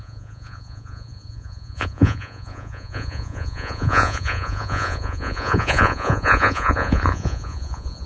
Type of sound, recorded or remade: remade